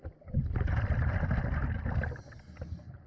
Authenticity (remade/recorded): recorded